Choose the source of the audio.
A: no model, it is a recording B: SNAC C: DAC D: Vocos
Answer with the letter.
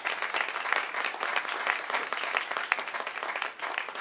A